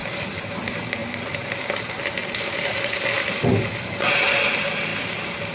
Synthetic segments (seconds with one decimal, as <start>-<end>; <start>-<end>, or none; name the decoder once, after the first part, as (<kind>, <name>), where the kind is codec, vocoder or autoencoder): 0.0-0.6 (vocoder, BigVGAN v2); 1.0-1.8; 2.2-3.0; 4.9-5.5